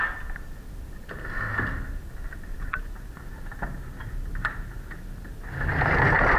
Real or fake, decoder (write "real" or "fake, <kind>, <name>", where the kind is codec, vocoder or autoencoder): real